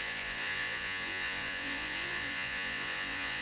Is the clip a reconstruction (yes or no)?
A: yes